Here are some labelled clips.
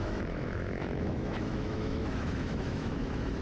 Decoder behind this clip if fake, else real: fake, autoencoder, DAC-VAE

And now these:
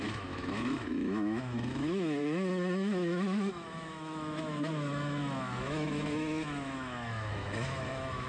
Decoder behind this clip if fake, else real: fake, autoencoder, DAC-VAE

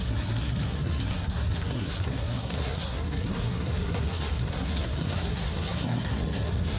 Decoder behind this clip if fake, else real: fake, codec, SNAC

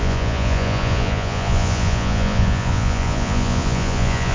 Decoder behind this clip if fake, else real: fake, vocoder, Vocos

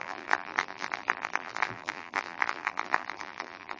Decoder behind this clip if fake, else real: fake, vocoder, BigVGAN v2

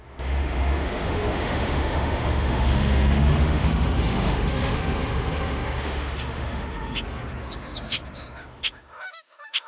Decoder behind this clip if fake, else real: fake, autoencoder, DAC-VAE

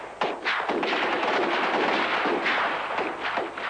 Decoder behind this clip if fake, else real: real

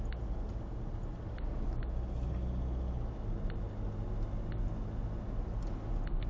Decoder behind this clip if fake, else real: real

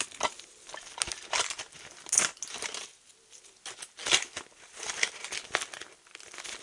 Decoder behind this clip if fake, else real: real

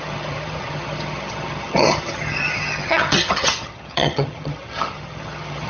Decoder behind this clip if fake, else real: fake, vocoder, HiFi-GAN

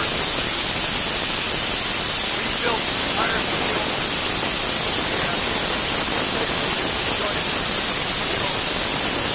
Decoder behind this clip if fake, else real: real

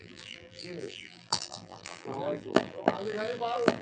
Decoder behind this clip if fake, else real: fake, vocoder, BigVGAN v2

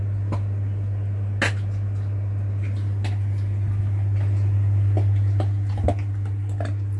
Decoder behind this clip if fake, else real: real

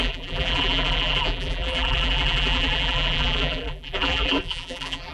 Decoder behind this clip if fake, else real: fake, vocoder, BigVGAN v2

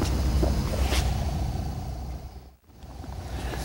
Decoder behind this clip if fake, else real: real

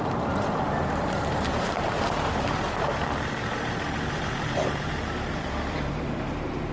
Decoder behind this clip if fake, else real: fake, vocoder, BigVGAN v2